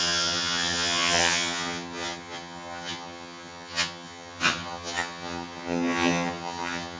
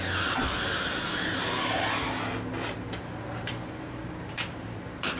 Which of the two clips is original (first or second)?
second